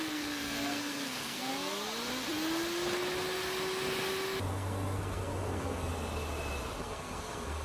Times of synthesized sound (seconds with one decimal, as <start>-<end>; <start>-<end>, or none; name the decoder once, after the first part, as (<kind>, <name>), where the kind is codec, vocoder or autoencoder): 0.0-1.5 (codec, SNAC); 4.5-5.9; 6.8-7.6